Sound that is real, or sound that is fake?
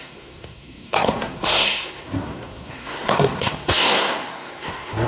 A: fake